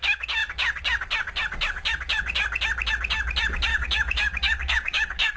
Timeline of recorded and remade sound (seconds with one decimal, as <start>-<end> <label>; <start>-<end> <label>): 0.0-3.7 recorded; 3.7-5.4 remade